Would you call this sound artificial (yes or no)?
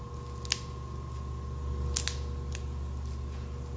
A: no